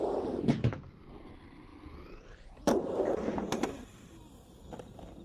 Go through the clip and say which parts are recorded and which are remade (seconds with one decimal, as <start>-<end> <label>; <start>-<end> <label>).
0.0-5.2 remade